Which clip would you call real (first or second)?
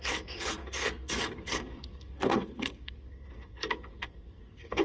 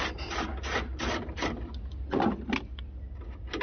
second